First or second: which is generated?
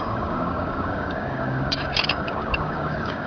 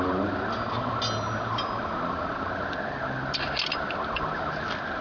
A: first